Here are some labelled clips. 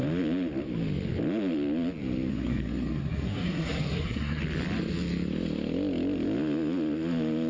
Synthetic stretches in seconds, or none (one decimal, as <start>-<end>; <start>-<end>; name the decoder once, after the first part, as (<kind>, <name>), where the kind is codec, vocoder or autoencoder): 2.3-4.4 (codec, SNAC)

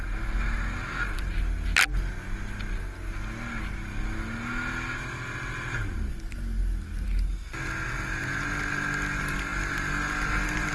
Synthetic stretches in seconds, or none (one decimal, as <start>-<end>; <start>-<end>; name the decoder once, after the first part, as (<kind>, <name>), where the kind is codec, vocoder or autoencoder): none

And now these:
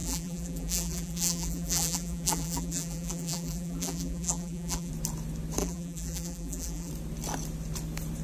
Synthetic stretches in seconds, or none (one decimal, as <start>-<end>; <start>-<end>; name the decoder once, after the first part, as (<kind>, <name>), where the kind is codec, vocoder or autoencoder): 0.0-4.9 (vocoder, BigVGAN v2); 5.6-6.9

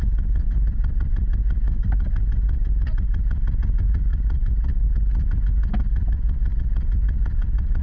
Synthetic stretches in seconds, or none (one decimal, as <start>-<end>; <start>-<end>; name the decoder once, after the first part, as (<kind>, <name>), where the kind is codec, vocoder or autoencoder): none